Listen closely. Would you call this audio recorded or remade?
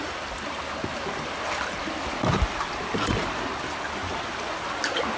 recorded